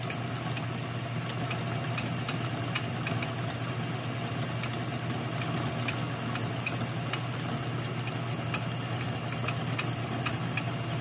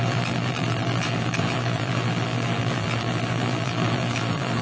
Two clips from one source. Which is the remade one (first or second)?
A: second